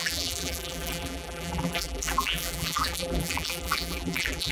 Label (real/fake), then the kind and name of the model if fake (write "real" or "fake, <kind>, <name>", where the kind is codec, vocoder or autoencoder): fake, vocoder, BigVGAN v2